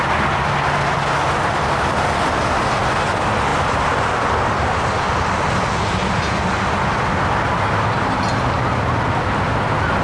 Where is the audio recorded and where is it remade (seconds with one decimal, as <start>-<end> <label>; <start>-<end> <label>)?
0.0-3.5 recorded; 3.5-4.2 remade; 4.2-10.0 recorded